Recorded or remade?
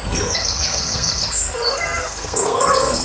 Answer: remade